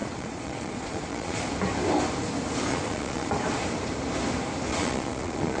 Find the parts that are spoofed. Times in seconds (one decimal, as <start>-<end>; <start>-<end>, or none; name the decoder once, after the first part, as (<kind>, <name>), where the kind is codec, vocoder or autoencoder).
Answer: 0.0-1.4 (vocoder, Vocos); 2.7-3.3; 4.7-5.6